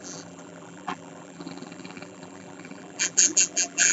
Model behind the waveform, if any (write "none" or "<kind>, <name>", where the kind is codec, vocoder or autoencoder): vocoder, BigVGAN v2